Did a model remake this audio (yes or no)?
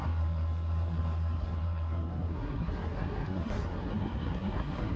yes